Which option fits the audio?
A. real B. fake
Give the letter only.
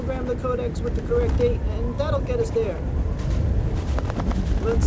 A